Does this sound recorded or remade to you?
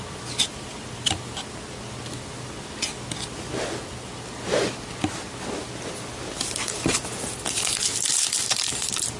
recorded